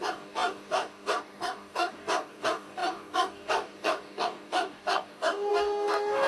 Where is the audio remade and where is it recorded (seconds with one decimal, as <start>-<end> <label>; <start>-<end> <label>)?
0.0-6.3 remade